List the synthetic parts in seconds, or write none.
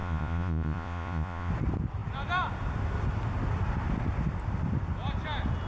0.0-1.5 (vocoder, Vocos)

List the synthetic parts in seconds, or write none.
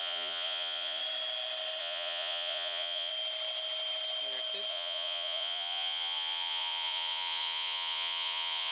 0.0-1.0 (vocoder, Vocos); 1.8-3.1; 4.7-8.7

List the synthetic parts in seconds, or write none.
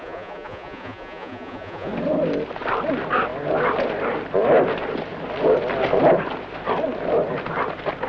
0.0-1.9 (vocoder, Vocos)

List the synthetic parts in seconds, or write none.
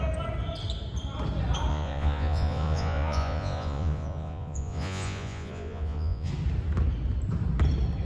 1.7-6.3 (vocoder, Vocos)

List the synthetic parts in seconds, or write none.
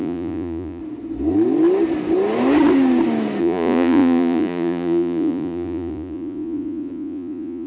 0.0-0.8 (vocoder, Vocos); 3.4-7.7